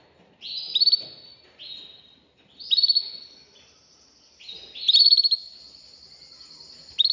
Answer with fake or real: real